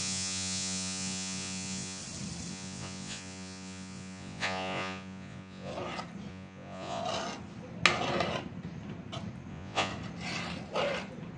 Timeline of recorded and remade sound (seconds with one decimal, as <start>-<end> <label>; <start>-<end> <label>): 0.0-2.0 remade; 2.0-2.5 recorded; 2.5-5.7 remade; 5.7-6.3 recorded; 6.3-7.0 remade; 7.0-9.5 recorded; 9.5-9.9 remade; 9.9-11.4 recorded